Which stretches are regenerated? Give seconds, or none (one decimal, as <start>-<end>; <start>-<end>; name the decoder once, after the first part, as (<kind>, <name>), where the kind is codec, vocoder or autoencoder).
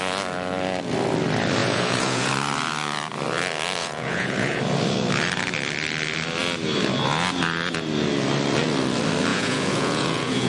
1.6-2.3 (vocoder, Vocos); 3.8-4.6; 9.3-10.5